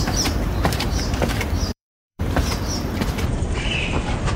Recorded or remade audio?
remade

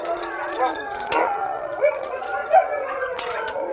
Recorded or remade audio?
remade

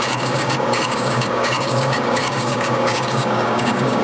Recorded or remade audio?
remade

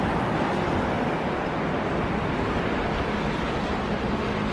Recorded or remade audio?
recorded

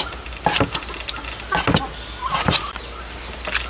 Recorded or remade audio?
recorded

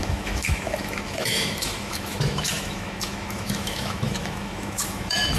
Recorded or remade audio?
remade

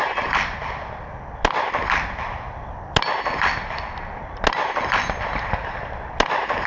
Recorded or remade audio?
recorded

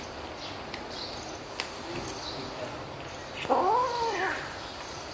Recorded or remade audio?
recorded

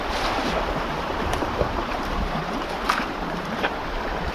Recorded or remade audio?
remade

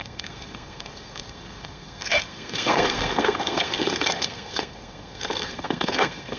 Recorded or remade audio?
remade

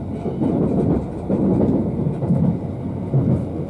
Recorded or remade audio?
recorded